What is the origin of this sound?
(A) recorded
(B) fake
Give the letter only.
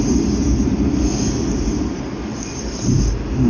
A